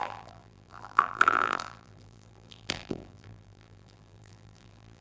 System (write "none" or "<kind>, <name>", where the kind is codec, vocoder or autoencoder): vocoder, BigVGAN v2